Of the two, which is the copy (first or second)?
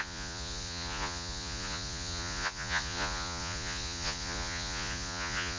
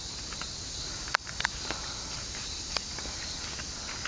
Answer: first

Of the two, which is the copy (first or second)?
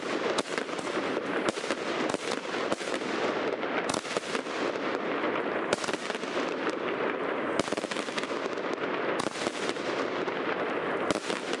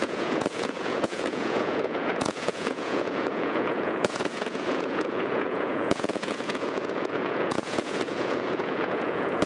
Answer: second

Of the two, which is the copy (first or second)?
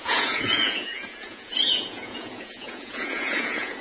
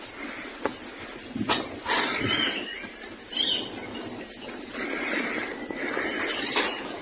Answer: first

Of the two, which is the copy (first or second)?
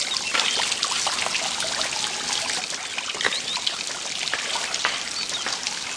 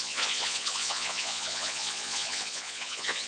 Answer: second